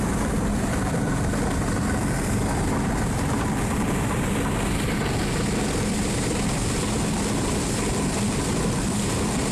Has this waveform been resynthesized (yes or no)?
yes